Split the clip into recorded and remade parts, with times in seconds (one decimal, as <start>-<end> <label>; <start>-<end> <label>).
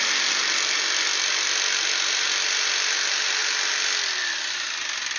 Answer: 0.0-5.2 recorded